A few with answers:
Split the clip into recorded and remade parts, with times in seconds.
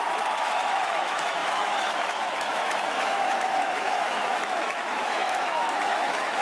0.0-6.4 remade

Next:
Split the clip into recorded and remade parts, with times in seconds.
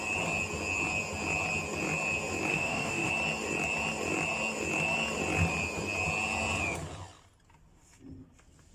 0.0-2.5 recorded; 2.5-3.1 remade; 3.1-8.7 recorded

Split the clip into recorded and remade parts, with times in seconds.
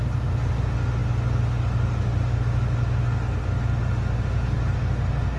0.0-5.4 recorded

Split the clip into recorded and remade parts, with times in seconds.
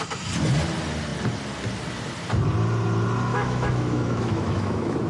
0.0-3.3 recorded; 3.3-5.1 remade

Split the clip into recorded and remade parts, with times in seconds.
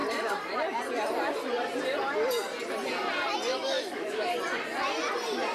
0.0-3.5 recorded; 3.5-4.4 remade; 4.4-5.5 recorded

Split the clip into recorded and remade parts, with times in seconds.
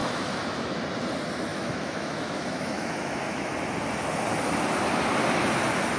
0.0-0.8 remade; 0.8-1.5 recorded; 1.5-3.5 remade; 3.5-6.0 recorded